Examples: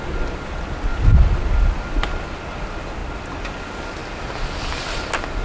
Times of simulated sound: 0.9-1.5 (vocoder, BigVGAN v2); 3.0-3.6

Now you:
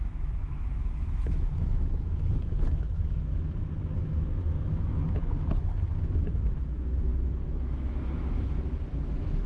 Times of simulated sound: 0.0-9.5 (autoencoder, DAC-VAE)

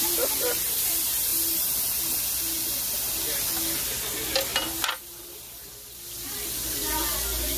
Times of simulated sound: none

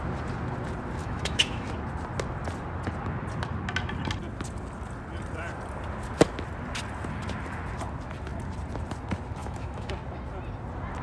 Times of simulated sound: 1.0-1.7 (autoencoder, DAC-VAE); 9.4-9.9